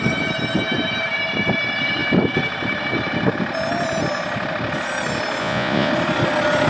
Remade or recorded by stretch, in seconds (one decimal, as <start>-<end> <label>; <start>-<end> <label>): 0.0-5.4 recorded; 5.4-5.9 remade; 5.9-6.7 recorded